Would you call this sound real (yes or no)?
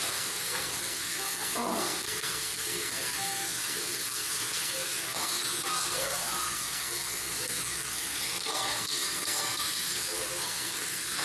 no